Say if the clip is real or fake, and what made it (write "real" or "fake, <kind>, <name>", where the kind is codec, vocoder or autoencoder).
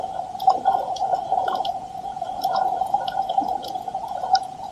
fake, vocoder, Vocos